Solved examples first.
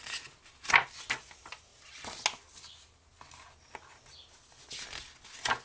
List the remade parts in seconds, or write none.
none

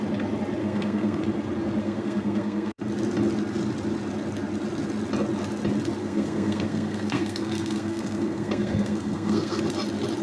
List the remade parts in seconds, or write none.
0.6-1.2 (codec, SNAC); 1.8-2.8; 6.0-9.6

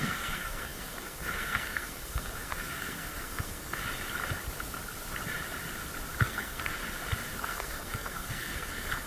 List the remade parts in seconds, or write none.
0.0-3.8 (codec, SNAC); 6.2-6.8; 7.4-9.1